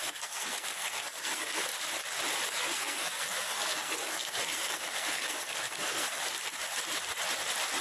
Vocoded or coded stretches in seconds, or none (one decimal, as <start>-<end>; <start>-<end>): 0.0-1.7; 2.5-6.2